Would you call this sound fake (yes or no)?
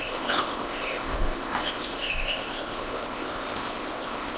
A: yes